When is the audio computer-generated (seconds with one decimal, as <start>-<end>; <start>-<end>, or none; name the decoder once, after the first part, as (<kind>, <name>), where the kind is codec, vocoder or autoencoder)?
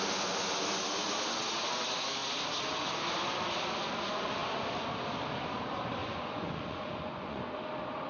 6.0-7.6 (vocoder, Vocos)